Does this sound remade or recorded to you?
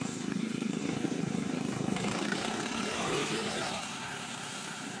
remade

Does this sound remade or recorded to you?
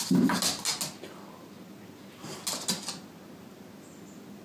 recorded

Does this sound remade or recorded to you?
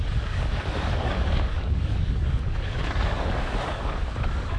remade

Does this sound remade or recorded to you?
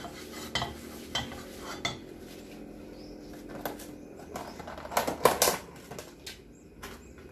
recorded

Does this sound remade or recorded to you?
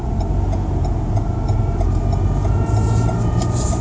recorded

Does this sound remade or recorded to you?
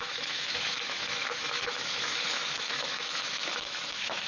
remade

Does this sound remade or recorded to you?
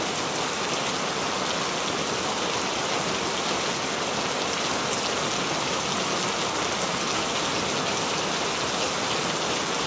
recorded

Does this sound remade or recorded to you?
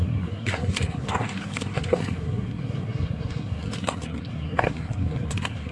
remade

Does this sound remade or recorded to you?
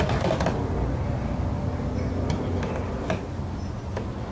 recorded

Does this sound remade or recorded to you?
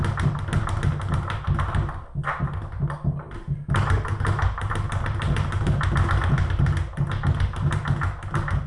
recorded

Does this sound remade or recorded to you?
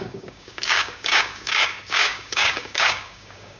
remade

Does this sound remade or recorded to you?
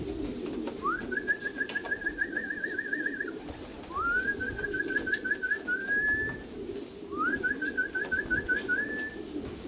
recorded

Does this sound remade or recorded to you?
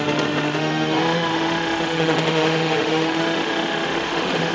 remade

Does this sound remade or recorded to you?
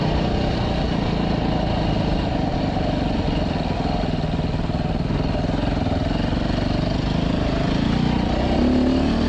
recorded